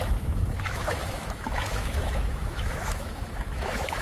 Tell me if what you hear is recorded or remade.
remade